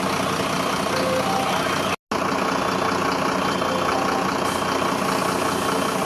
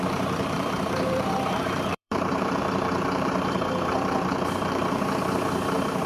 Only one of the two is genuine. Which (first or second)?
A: first